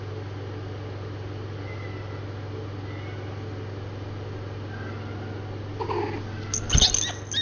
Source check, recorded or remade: recorded